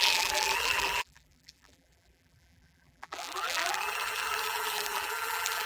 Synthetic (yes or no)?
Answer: yes